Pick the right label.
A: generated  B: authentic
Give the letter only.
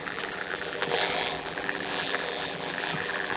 A